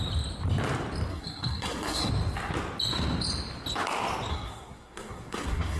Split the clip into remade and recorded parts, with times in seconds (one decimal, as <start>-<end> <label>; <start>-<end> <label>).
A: 0.0-1.1 recorded; 1.1-2.1 remade; 2.1-4.3 recorded; 4.3-5.8 remade